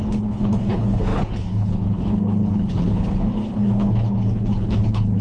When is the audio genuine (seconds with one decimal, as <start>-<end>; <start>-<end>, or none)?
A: none